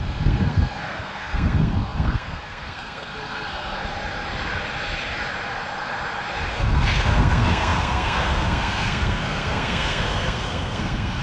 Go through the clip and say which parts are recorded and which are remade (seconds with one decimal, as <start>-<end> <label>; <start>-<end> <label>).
0.0-3.8 remade; 3.8-6.5 recorded; 6.5-11.2 remade